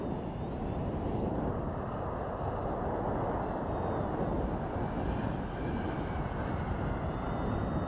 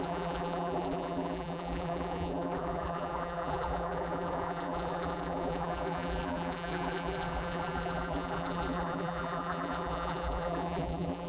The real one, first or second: first